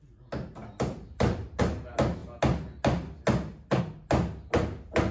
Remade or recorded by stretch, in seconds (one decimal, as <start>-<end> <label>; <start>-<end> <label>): 0.0-0.6 recorded; 0.6-1.6 remade; 1.6-5.1 recorded